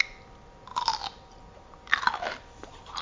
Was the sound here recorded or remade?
recorded